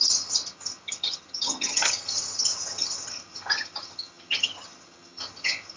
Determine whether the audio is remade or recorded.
remade